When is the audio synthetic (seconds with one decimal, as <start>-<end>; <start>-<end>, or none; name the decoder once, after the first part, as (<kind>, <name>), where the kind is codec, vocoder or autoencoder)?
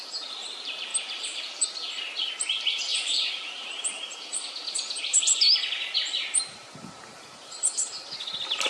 2.9-5.6 (vocoder, BigVGAN v2); 6.5-8.1